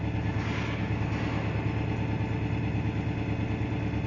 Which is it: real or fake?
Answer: real